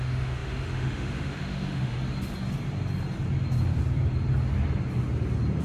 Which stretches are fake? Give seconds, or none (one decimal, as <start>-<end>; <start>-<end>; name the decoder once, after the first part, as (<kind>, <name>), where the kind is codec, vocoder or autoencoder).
0.0-2.0 (autoencoder, DAC-VAE)